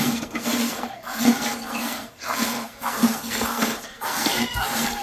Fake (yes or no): yes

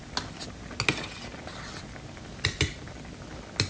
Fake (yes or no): no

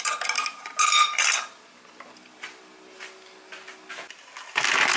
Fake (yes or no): no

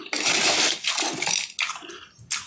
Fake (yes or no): no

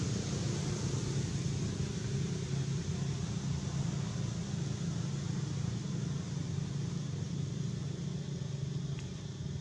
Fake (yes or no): no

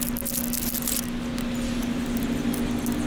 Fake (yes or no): no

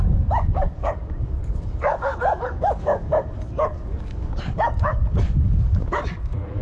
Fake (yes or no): yes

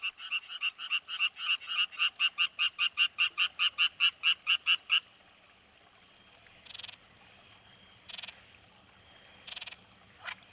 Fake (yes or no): no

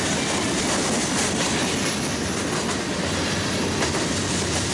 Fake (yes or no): no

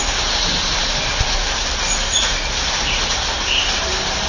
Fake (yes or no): no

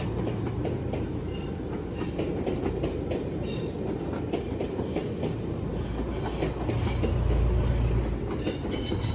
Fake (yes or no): no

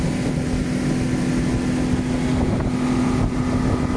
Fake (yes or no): no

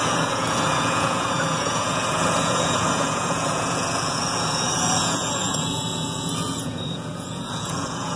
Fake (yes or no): yes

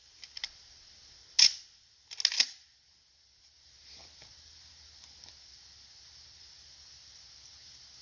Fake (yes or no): no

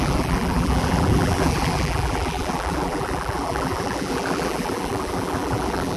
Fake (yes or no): yes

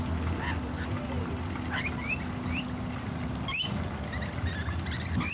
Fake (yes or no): no